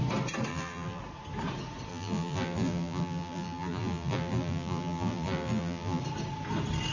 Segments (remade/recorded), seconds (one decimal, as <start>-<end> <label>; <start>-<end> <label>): 0.0-0.5 recorded; 0.5-1.0 remade; 1.0-1.9 recorded; 1.9-6.0 remade; 6.0-6.9 recorded